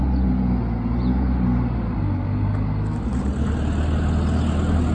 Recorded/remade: recorded